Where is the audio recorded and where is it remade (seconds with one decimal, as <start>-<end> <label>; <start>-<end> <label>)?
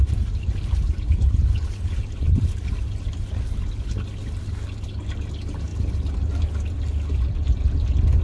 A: 0.0-8.2 recorded